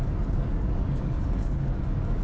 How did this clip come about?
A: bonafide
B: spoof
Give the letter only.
B